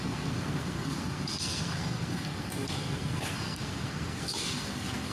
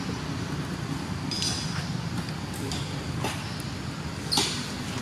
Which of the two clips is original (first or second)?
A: second